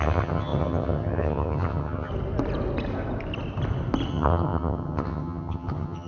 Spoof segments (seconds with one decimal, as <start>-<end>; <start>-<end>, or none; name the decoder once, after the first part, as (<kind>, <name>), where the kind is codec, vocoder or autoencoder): 0.0-2.1 (vocoder, HiFi-GAN); 4.1-6.1